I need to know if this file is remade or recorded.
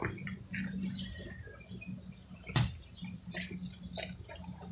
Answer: recorded